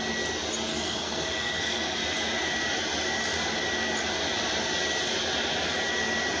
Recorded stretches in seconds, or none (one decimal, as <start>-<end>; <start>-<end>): 0.0-0.7; 2.0-6.4